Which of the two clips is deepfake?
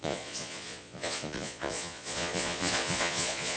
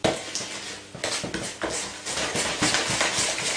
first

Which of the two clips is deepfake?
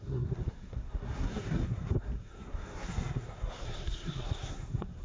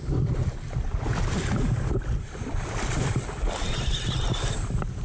first